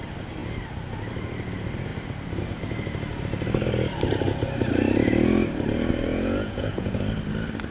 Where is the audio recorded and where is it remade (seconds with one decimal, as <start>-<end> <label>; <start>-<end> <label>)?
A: 0.0-6.1 recorded; 6.1-7.0 remade; 7.0-7.7 recorded